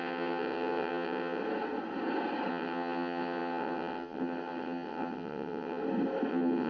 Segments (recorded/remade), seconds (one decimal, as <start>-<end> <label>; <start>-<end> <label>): 0.0-1.4 remade; 1.4-2.5 recorded; 2.5-5.8 remade; 5.8-6.3 recorded; 6.3-6.7 remade